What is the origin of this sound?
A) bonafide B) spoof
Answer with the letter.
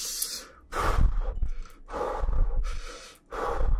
A